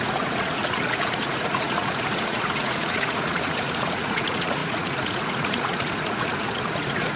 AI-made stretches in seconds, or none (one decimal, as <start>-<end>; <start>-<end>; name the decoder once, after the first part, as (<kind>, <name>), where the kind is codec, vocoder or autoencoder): 0.0-7.2 (vocoder, Vocos)